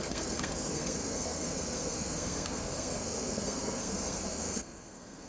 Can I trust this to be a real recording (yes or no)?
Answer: no